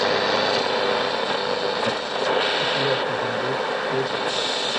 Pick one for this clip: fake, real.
real